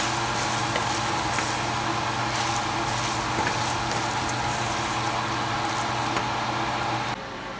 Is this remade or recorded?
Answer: recorded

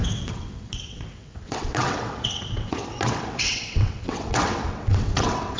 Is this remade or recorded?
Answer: remade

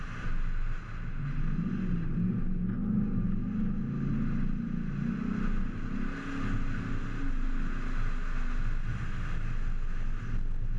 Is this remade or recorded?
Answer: recorded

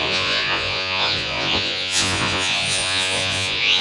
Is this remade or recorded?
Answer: remade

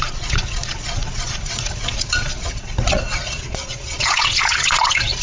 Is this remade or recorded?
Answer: remade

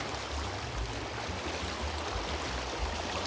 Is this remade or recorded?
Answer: recorded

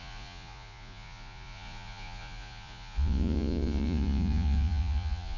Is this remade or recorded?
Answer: remade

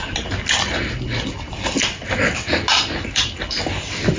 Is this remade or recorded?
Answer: recorded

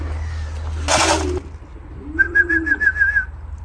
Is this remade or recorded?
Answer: recorded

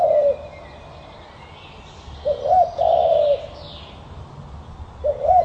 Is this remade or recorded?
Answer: recorded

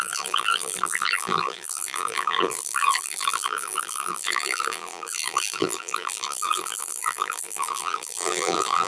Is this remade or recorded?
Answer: remade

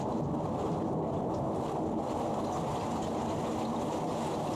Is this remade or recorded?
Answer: recorded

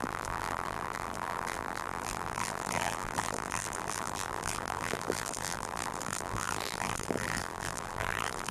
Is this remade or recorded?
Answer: remade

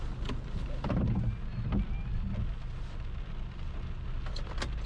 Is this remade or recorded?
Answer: recorded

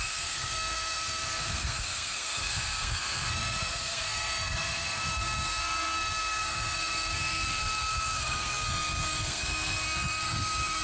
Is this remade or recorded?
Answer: remade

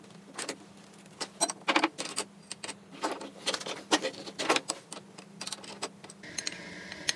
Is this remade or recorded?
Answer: recorded